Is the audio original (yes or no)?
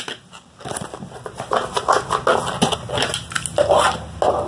yes